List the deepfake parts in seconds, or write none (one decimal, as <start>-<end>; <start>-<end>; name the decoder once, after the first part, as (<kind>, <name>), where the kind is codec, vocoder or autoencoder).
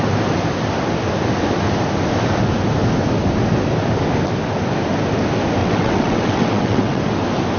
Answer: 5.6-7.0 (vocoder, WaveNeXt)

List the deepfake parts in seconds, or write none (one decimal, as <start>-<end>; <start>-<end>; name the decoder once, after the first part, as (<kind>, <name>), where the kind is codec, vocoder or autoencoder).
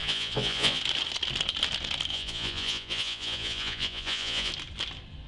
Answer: 0.0-0.8 (vocoder, Vocos); 2.1-4.5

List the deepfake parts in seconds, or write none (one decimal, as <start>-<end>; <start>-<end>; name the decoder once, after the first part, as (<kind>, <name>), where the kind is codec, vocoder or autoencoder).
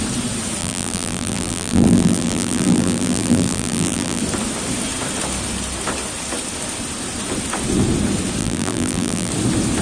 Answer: 0.6-4.2 (vocoder, BigVGAN v2); 8.4-9.3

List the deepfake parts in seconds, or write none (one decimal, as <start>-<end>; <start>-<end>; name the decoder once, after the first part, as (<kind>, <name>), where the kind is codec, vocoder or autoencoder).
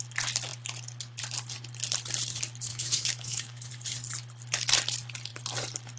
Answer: 2.7-3.7 (autoencoder, DAC-VAE)